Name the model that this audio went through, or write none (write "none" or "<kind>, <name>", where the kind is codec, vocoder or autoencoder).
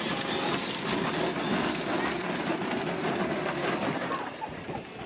none